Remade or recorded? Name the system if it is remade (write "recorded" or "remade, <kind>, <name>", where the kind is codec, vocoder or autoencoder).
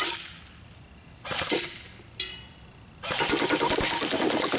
recorded